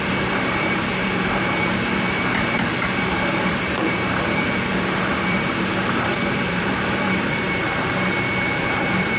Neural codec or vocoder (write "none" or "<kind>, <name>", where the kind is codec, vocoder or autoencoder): vocoder, BigVGAN v2